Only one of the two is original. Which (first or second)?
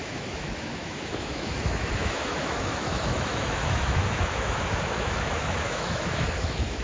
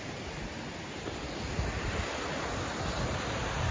second